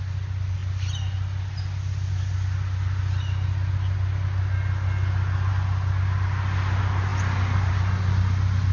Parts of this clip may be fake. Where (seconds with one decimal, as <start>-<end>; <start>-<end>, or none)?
none